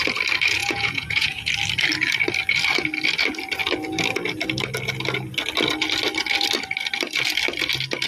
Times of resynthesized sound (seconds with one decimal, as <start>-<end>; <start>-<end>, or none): 0.6-1.5